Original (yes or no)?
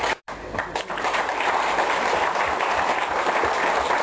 no